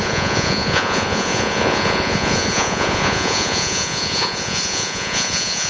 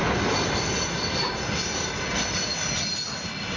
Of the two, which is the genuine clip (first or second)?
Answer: second